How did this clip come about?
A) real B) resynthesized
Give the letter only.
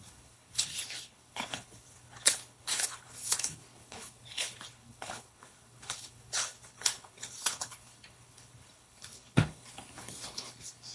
B